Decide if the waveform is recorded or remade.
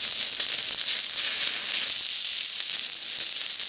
recorded